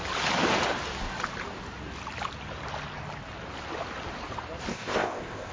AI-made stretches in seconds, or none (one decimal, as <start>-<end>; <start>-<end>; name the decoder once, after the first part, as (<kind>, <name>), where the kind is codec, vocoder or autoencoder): 4.7-5.5 (codec, ZipCodec)

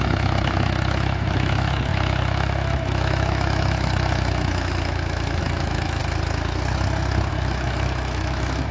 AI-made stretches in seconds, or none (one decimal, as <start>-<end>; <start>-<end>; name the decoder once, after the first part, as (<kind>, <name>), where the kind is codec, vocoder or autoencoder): 0.0-6.0 (autoencoder, DAC-VAE); 7.3-8.7

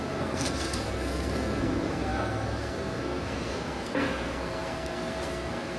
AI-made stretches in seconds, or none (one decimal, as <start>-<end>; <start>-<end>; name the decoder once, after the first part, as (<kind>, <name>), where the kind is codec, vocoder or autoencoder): 0.0-5.8 (codec, SNAC)

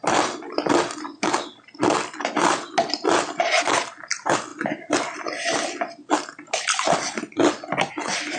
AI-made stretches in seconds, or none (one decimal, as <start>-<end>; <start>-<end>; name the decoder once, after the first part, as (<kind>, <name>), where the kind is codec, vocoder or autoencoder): none